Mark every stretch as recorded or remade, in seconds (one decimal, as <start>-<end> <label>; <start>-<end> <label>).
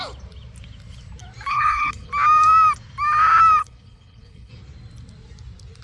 0.0-1.5 recorded; 1.5-2.1 remade; 2.1-3.6 recorded; 3.6-4.5 remade; 4.5-5.8 recorded